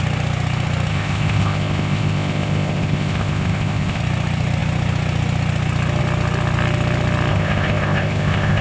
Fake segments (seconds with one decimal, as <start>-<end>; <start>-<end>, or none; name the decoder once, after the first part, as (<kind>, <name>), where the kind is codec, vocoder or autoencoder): 0.9-4.0 (codec, ZipCodec); 7.3-8.6